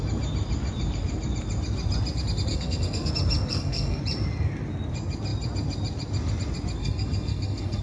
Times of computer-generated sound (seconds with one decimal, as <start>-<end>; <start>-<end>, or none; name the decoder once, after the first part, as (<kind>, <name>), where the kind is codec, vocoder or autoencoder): 2.5-3.1 (codec, SNAC); 3.5-4.0; 6.8-7.8